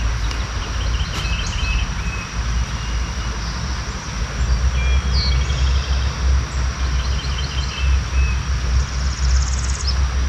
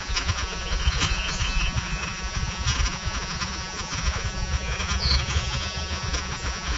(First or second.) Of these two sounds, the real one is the first